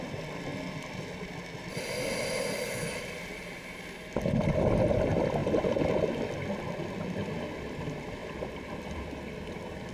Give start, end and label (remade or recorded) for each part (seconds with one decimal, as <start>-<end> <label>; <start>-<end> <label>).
0.0-5.4 recorded; 5.4-6.1 remade; 6.1-8.2 recorded; 8.2-9.5 remade; 9.5-9.9 recorded